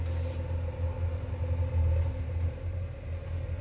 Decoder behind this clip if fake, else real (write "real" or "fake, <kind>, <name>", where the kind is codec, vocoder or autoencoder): real